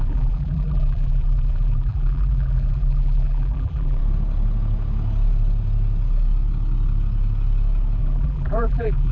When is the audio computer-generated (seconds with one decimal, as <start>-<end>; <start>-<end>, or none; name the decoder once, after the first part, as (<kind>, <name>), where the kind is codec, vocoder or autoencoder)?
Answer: 0.0-4.0 (vocoder, BigVGAN v2); 8.0-9.1